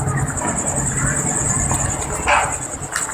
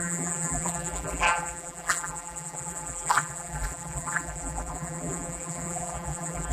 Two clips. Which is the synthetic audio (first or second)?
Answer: second